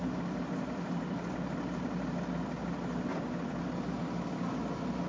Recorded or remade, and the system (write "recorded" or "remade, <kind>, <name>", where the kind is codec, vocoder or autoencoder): recorded